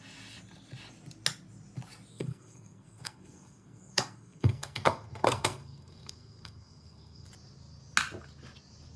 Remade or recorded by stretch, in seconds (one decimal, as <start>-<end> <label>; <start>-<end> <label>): 0.0-2.1 recorded; 2.1-7.3 remade; 7.3-9.0 recorded